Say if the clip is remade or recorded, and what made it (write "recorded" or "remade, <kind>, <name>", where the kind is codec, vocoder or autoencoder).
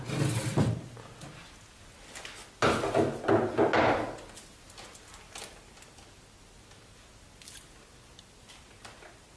recorded